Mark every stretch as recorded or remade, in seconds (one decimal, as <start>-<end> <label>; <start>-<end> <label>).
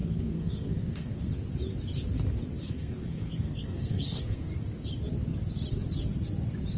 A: 0.0-1.3 remade; 1.3-2.6 recorded; 2.6-4.5 remade; 4.5-6.8 recorded